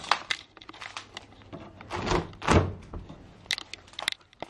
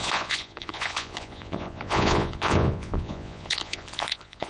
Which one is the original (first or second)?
first